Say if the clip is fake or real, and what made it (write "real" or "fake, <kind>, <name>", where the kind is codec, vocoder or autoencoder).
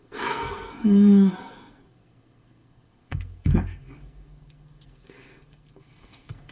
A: fake, codec, SNAC